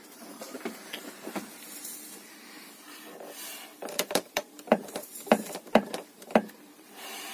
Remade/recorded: remade